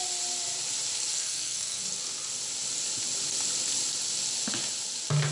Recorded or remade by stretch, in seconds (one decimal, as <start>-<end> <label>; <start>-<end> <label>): 0.0-1.1 recorded; 1.1-1.9 remade; 1.9-5.3 recorded